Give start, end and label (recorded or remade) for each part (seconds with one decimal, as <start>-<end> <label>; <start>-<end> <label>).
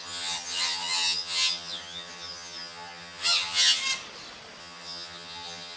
0.0-3.8 remade; 3.8-4.6 recorded; 4.6-5.8 remade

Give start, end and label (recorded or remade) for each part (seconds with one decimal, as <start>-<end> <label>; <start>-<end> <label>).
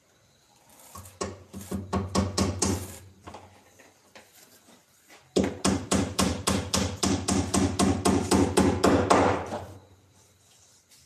0.0-0.7 remade; 0.7-5.8 recorded; 5.8-6.3 remade; 6.3-10.7 recorded; 10.7-11.1 remade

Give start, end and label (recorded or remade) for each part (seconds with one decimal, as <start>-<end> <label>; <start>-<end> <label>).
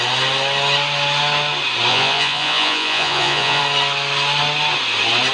0.0-1.9 recorded; 1.9-3.6 remade; 3.6-5.3 recorded